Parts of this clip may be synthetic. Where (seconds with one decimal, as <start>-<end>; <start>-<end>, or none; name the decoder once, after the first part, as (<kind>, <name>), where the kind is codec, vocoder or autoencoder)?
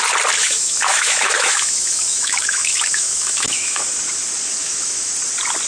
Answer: 0.4-3.8 (autoencoder, DAC-VAE); 4.6-5.1